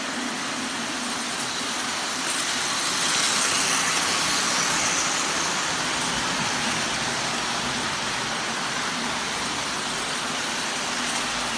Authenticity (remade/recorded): recorded